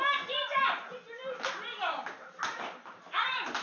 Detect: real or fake real